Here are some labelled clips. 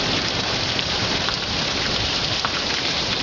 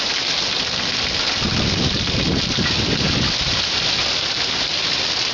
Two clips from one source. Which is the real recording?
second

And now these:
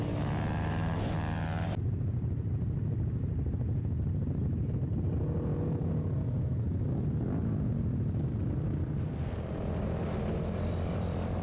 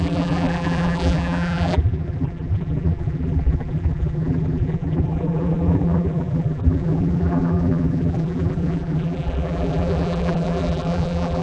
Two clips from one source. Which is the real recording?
first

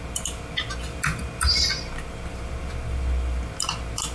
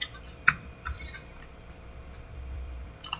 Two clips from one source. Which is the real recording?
first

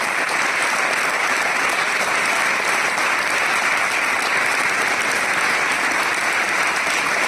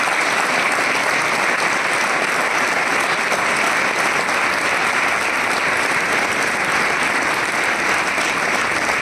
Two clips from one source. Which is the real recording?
second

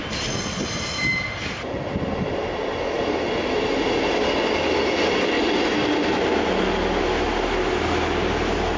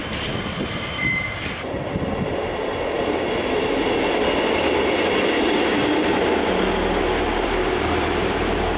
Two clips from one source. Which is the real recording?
first